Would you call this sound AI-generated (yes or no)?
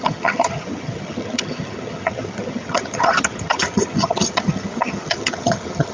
yes